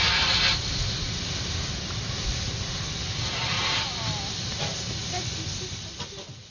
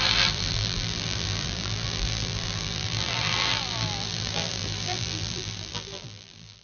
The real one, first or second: first